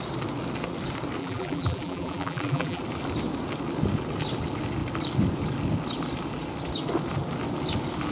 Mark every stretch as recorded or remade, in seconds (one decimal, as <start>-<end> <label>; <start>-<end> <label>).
0.0-1.2 recorded; 1.2-2.8 remade; 2.8-8.1 recorded